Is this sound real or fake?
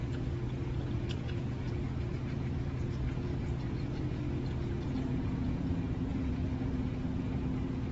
fake